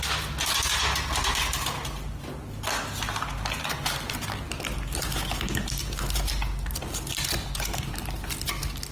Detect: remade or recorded recorded